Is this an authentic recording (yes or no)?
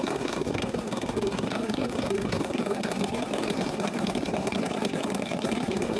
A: no